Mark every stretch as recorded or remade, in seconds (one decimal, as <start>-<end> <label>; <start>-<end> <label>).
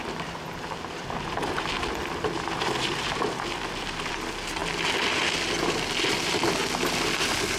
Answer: 0.0-4.1 remade; 4.1-7.6 recorded